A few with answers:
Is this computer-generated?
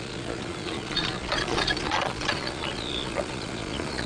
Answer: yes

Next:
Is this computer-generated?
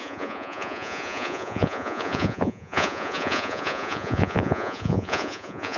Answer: yes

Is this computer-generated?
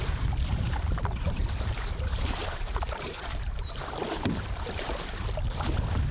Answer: yes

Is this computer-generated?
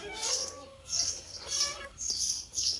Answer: yes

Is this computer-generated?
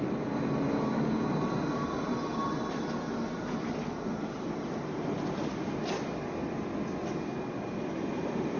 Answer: no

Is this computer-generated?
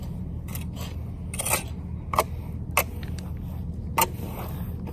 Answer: no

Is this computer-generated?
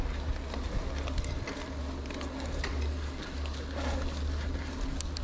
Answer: no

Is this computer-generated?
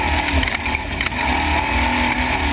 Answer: no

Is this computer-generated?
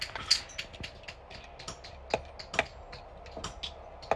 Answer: no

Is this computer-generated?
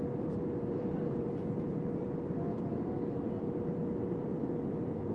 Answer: yes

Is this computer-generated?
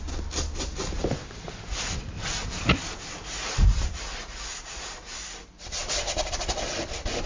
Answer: no